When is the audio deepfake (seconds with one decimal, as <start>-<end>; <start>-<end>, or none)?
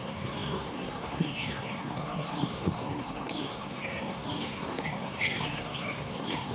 0.0-6.5